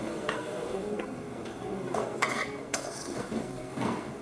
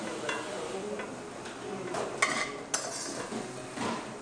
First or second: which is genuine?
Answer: second